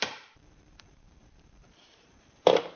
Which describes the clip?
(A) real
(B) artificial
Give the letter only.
B